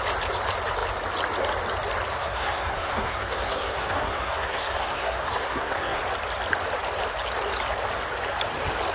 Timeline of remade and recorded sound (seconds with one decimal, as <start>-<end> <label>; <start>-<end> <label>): 0.0-2.1 recorded; 2.1-6.0 remade; 6.0-8.9 recorded